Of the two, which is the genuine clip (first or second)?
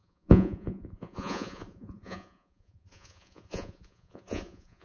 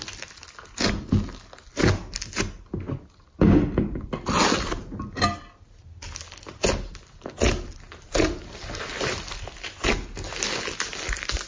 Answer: second